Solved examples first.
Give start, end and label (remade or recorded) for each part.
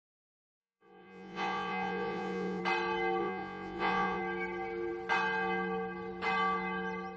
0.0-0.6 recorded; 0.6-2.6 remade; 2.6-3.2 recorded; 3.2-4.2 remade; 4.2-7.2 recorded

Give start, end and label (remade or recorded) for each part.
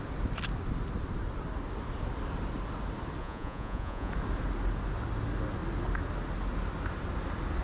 0.0-3.2 recorded; 3.2-4.1 remade; 4.1-7.6 recorded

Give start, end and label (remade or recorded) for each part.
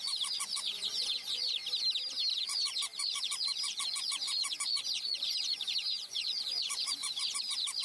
0.0-1.6 remade; 1.6-2.3 recorded; 2.3-7.8 remade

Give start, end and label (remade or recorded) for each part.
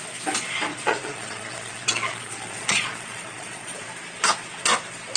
0.0-0.7 recorded; 0.7-3.8 remade; 3.8-5.2 recorded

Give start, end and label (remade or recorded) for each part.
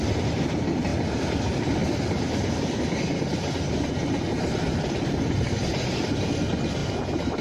0.0-7.4 recorded